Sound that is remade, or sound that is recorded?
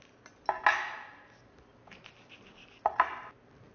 recorded